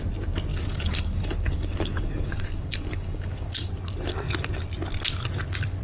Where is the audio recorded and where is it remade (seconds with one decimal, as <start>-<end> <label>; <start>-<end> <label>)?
0.0-0.5 recorded; 0.5-3.7 remade; 3.7-5.8 recorded